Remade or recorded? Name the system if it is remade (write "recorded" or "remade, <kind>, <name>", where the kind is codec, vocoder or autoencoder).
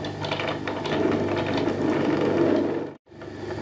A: recorded